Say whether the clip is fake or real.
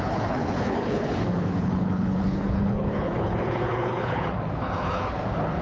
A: fake